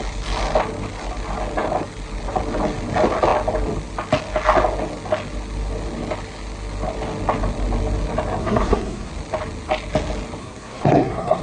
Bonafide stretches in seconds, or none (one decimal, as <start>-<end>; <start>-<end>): 0.0-8.4; 9.1-10.4